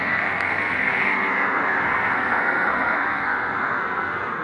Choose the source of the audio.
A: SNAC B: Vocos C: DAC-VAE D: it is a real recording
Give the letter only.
A